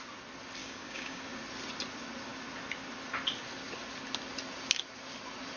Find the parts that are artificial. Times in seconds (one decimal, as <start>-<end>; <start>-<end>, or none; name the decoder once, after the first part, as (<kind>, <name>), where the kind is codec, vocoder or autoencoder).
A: 0.6-1.2 (codec, DAC)